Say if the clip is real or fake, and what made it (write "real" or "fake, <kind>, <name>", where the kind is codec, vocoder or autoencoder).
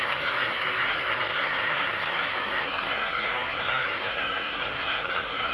fake, codec, SNAC